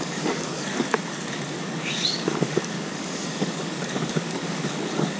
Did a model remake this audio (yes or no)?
yes